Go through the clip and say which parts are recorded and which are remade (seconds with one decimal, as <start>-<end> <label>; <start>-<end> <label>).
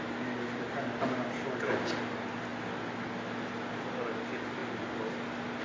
0.0-5.6 recorded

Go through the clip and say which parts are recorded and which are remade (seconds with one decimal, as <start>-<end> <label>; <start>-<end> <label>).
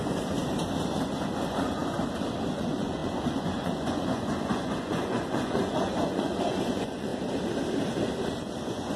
0.0-0.4 remade; 0.4-1.0 recorded; 1.0-1.8 remade; 1.8-2.5 recorded; 2.5-7.1 remade; 7.1-8.6 recorded; 8.6-9.0 remade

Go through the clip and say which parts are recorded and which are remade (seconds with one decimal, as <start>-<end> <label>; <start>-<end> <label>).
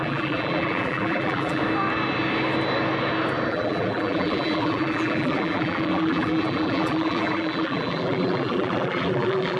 0.0-1.6 remade; 1.6-3.5 recorded; 3.5-9.6 remade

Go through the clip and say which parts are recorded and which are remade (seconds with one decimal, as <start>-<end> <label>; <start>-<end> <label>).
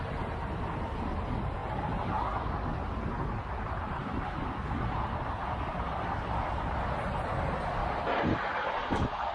0.0-9.3 recorded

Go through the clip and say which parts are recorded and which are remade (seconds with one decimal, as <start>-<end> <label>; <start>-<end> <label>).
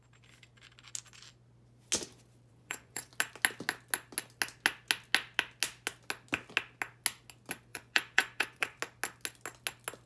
0.0-2.5 recorded; 2.5-3.1 remade; 3.1-7.7 recorded; 7.7-8.8 remade; 8.8-10.1 recorded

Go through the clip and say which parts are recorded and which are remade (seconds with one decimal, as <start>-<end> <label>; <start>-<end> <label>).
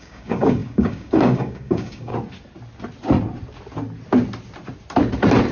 0.0-2.1 remade; 2.1-5.5 recorded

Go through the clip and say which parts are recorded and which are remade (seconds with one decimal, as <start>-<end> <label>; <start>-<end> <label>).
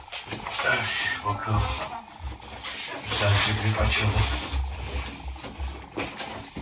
0.0-1.4 recorded; 1.4-2.0 remade; 2.0-6.6 recorded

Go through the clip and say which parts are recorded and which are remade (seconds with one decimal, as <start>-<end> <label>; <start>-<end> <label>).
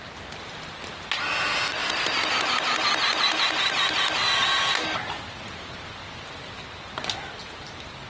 0.0-8.1 recorded